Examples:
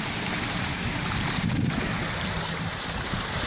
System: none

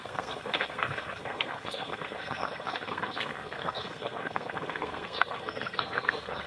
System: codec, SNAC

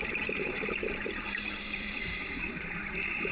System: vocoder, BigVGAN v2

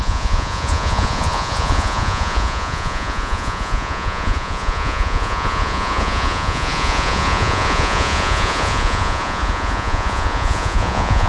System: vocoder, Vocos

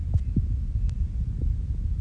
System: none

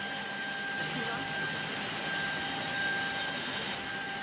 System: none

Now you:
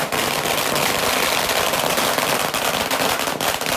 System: none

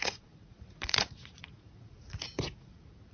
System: vocoder, Vocos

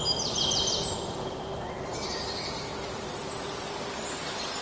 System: none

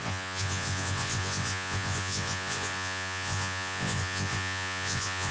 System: vocoder, Vocos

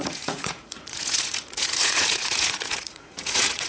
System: vocoder, Vocos